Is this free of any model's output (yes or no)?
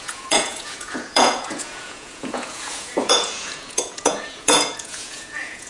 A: no